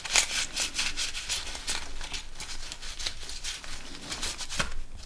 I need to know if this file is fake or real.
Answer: real